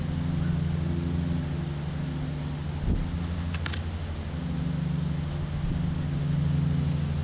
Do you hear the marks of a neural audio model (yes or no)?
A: no